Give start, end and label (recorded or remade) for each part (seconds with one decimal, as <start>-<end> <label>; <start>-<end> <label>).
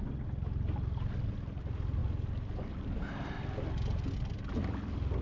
0.0-5.2 recorded